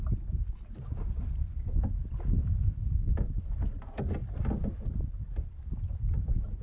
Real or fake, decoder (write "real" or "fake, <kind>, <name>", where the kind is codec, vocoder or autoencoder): real